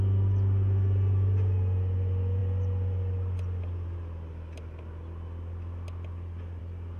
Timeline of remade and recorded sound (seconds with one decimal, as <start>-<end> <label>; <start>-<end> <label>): 0.0-7.0 recorded